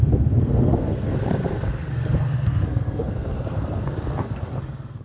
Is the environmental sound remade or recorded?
remade